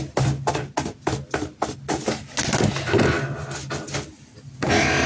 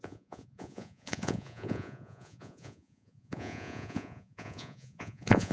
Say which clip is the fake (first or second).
second